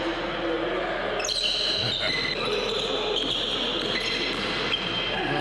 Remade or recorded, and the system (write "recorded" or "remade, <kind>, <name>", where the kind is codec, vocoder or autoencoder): recorded